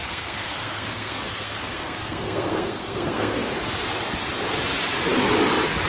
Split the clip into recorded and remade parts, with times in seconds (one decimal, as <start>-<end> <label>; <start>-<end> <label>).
0.0-3.5 remade; 3.5-5.9 recorded